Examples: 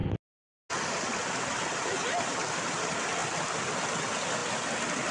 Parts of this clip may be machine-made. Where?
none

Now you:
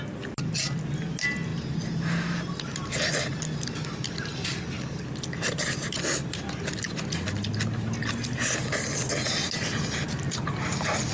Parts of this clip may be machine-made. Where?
none